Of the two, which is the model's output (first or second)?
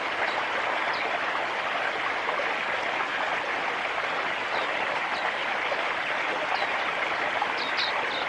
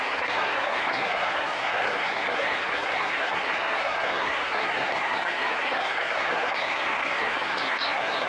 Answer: second